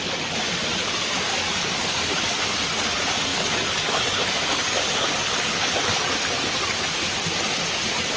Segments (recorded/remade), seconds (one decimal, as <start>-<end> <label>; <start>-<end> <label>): 0.0-1.3 recorded; 1.3-2.4 remade; 2.4-3.3 recorded; 3.3-5.7 remade; 5.7-8.2 recorded